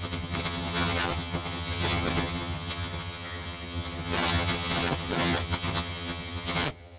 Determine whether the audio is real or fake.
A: fake